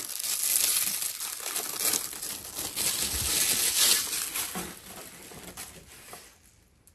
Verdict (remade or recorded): recorded